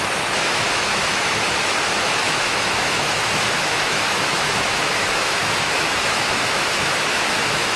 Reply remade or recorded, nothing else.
remade